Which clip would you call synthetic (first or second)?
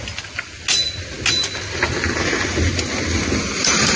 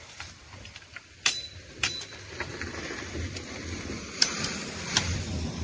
second